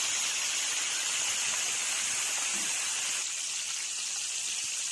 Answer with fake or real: real